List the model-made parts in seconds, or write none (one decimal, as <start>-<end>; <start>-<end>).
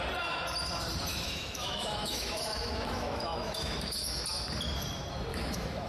1.1-4.2; 5.3-5.9